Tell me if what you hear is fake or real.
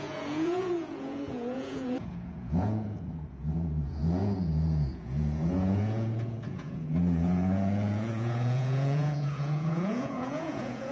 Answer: fake